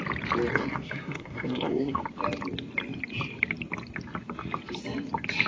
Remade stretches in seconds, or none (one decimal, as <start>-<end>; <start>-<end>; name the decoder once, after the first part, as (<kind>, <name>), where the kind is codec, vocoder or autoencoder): 0.5-2.0 (codec, SNAC)